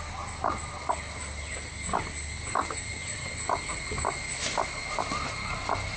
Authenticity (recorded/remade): recorded